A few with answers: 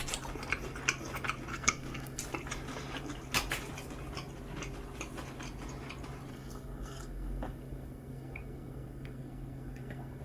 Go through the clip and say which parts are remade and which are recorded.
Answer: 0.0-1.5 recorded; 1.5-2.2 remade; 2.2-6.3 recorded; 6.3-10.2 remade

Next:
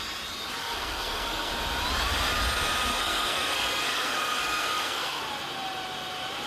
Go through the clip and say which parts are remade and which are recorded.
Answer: 0.0-0.6 recorded; 0.6-1.5 remade; 1.5-2.9 recorded; 2.9-5.2 remade; 5.2-6.5 recorded